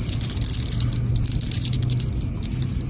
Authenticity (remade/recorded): recorded